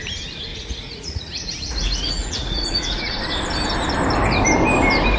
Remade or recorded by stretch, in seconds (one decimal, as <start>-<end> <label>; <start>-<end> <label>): 0.0-0.5 recorded; 0.5-3.2 remade; 3.2-5.2 recorded